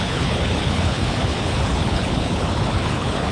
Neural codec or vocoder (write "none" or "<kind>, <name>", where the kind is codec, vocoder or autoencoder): codec, HILCodec